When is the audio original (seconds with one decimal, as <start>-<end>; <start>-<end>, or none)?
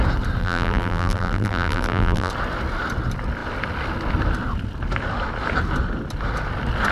0.0-0.4; 2.3-6.9